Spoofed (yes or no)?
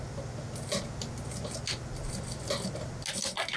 no